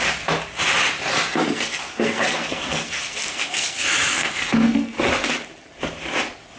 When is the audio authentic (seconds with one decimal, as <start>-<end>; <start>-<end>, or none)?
0.0-1.1; 5.1-6.6